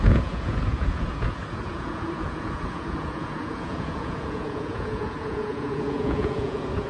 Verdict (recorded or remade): remade